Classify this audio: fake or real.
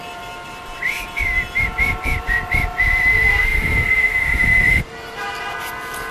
fake